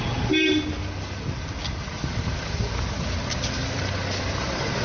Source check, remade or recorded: recorded